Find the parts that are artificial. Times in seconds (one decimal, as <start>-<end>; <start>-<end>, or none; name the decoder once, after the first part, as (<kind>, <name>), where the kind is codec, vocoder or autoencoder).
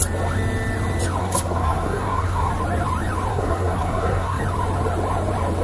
1.2-2.5 (codec, SNAC); 3.3-4.4